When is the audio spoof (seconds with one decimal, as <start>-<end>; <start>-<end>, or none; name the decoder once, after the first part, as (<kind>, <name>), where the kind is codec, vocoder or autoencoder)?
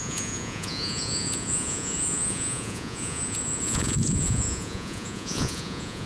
0.0-6.1 (vocoder, Vocos)